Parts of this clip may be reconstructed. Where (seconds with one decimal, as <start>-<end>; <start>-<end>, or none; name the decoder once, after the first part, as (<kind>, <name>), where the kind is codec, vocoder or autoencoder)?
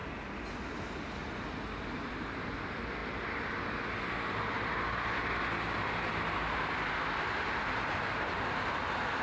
none